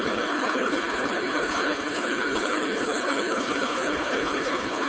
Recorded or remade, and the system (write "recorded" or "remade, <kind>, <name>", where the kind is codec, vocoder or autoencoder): remade, codec, HILCodec